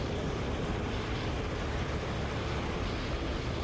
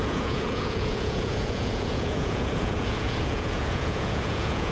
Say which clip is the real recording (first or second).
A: first